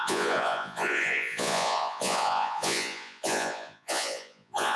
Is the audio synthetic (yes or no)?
yes